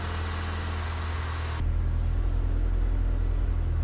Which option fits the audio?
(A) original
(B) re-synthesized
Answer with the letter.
A